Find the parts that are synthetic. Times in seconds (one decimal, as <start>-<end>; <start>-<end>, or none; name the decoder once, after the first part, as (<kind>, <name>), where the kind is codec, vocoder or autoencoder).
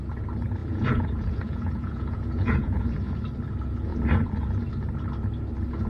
0.6-3.2 (vocoder, Vocos)